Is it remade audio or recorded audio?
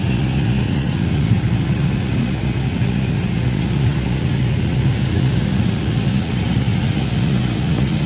remade